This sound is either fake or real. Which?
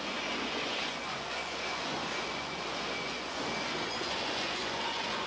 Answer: fake